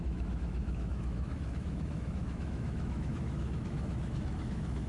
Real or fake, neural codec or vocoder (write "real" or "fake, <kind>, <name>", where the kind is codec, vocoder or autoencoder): fake, autoencoder, DAC-VAE